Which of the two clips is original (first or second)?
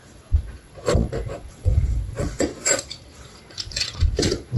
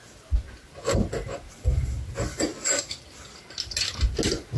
second